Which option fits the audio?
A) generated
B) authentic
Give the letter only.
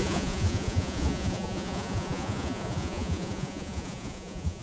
A